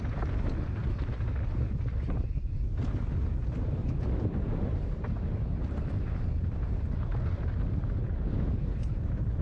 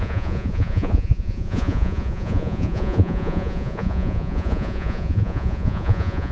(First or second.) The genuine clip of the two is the first